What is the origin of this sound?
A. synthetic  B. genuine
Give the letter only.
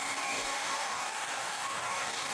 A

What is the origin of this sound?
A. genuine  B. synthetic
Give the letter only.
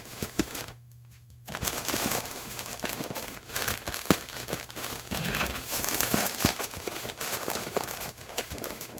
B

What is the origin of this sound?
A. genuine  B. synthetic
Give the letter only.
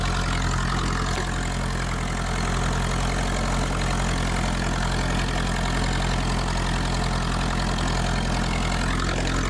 A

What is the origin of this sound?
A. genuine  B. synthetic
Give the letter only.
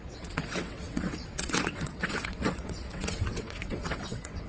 B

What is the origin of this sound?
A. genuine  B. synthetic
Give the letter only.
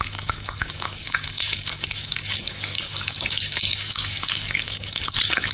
B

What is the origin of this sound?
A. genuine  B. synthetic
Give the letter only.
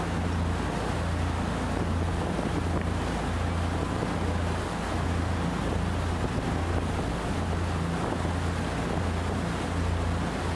A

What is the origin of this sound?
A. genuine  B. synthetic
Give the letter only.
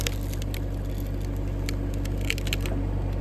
A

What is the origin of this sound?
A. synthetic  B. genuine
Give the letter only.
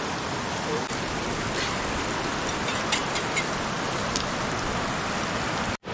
B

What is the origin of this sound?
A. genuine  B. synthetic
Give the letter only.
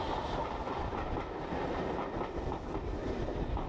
A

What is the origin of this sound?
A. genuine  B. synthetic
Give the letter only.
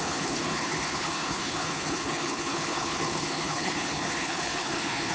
B